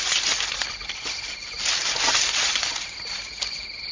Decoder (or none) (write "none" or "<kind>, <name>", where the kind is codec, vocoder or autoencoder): none